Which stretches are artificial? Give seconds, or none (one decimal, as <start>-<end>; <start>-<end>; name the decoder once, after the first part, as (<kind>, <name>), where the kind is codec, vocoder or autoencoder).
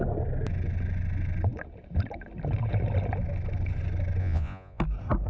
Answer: 4.2-4.8 (vocoder, Vocos)